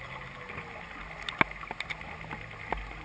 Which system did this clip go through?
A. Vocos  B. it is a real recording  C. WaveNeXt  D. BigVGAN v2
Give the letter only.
B